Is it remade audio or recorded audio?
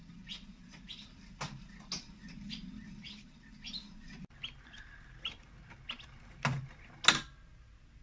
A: recorded